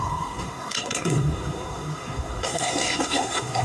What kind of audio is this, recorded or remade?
remade